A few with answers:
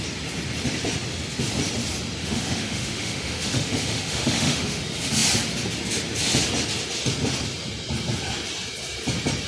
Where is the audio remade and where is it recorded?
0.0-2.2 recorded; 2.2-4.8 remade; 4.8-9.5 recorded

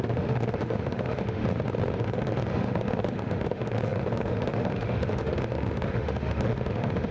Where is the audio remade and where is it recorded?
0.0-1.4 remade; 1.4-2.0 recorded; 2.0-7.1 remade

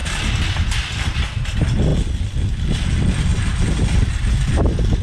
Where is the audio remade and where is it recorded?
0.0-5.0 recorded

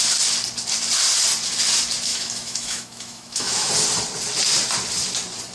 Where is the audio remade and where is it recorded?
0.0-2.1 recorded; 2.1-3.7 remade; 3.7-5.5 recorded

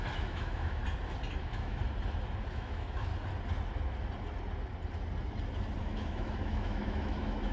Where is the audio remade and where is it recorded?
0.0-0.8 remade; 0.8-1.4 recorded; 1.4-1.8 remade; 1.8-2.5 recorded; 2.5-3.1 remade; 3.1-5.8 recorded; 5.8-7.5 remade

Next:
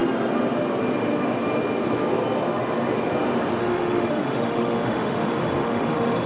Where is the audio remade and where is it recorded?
0.0-3.6 recorded; 3.6-6.3 remade